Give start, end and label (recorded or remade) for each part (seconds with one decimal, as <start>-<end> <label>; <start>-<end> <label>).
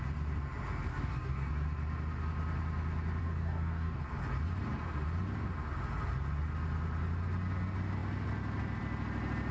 0.0-0.9 recorded; 0.9-1.5 remade; 1.5-3.2 recorded; 3.2-4.0 remade; 4.0-9.5 recorded